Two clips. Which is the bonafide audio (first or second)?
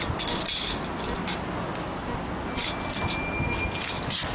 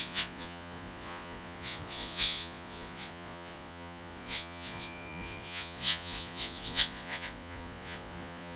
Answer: first